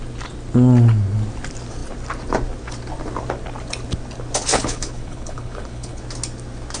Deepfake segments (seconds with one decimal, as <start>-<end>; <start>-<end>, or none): 4.5-6.0